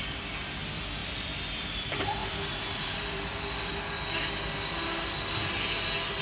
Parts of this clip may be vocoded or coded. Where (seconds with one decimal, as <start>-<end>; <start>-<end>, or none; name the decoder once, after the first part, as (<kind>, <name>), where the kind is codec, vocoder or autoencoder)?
1.0-1.6 (vocoder, BigVGAN v2); 2.2-3.7